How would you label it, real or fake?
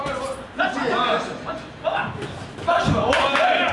real